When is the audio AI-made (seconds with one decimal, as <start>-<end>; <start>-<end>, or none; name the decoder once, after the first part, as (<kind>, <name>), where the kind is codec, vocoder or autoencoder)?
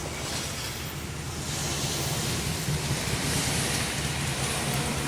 none